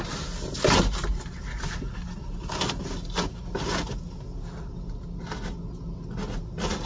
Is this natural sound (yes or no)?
yes